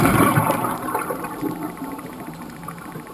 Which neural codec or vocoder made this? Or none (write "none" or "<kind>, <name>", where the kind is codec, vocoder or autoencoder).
vocoder, BigVGAN v2